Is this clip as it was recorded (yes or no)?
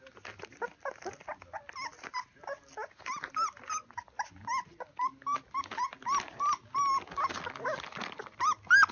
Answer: yes